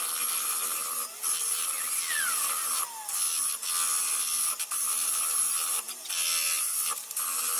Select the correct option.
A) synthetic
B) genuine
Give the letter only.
B